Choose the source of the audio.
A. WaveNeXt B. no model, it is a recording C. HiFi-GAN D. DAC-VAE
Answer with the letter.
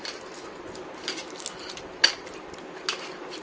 B